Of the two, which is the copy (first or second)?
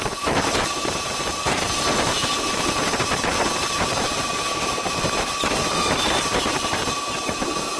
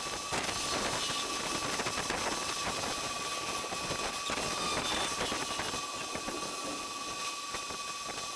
first